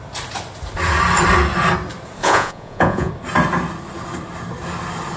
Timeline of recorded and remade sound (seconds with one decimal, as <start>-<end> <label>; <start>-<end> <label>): 0.0-2.2 recorded; 2.2-3.1 remade; 3.1-5.2 recorded